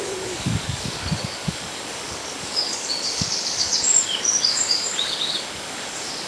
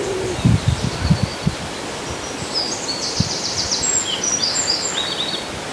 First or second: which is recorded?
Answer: second